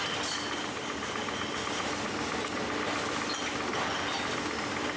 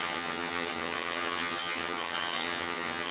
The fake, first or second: second